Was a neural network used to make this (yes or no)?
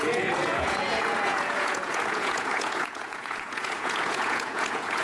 yes